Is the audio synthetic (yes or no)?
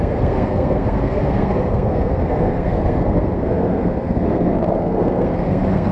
yes